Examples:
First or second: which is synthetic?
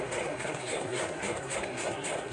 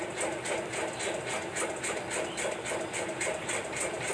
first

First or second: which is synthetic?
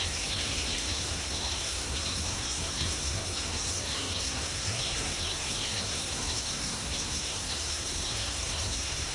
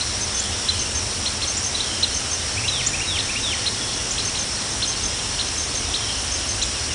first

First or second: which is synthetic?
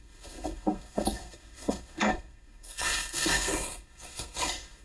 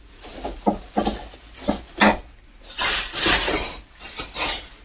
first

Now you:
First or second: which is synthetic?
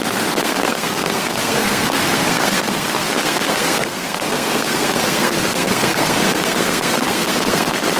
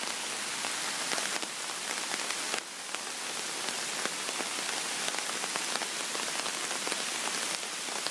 first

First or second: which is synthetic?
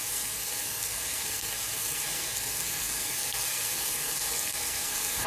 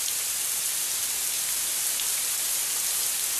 first